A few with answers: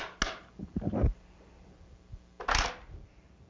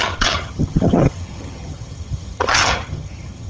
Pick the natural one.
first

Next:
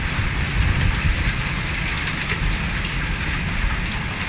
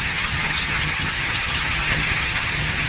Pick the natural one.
first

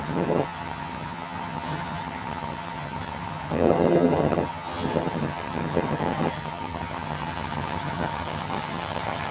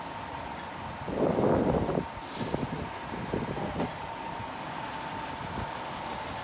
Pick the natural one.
second